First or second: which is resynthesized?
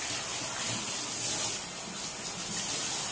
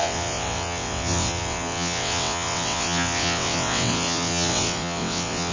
second